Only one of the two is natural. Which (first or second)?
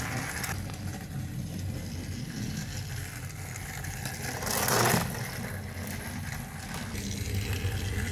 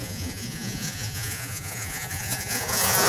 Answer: first